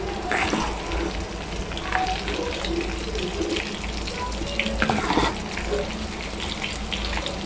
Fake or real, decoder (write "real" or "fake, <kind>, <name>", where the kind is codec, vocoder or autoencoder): real